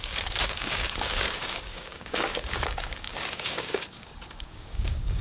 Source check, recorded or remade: remade